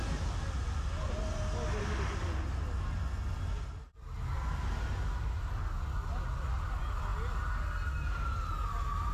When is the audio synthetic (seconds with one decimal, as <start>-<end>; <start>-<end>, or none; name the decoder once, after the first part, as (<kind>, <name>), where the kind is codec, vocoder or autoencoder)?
none